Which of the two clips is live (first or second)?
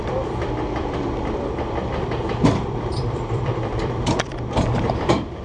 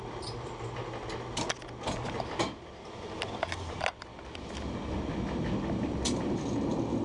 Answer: second